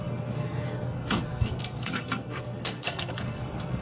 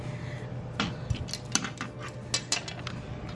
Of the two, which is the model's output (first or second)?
first